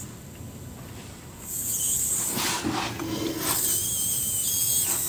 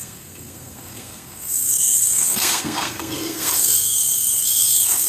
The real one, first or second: first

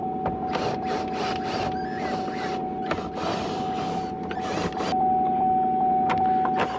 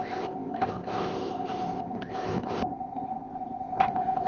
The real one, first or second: first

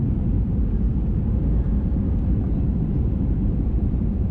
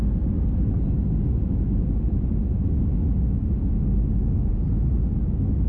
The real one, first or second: second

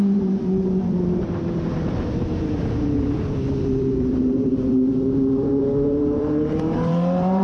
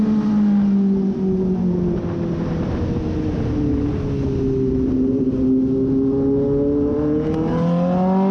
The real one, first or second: second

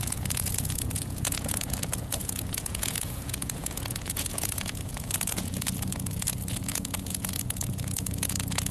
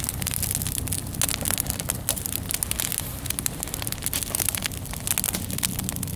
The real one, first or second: second